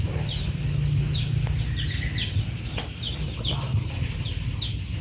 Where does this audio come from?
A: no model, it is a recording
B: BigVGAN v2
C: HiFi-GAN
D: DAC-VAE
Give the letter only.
A